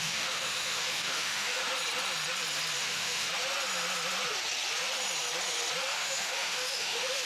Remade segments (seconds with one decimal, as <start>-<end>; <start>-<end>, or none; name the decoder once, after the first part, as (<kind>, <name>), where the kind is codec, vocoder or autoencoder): 0.0-1.6 (autoencoder, DAC-VAE); 2.8-3.3; 5.8-7.3